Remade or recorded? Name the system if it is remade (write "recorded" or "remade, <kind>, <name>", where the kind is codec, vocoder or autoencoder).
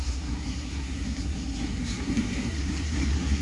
remade, codec, SNAC